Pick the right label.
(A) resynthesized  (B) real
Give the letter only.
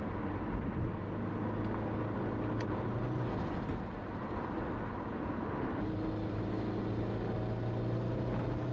B